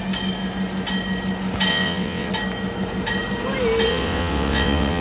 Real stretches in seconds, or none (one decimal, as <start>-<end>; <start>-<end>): 0.0-1.7; 2.3-3.9